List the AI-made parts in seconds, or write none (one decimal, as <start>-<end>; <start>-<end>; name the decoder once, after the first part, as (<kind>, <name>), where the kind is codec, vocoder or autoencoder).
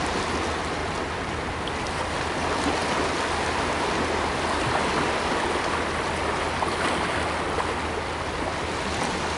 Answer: none